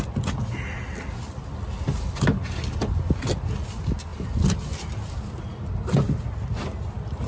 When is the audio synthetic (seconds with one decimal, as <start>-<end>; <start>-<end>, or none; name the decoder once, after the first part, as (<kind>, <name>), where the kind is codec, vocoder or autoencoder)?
none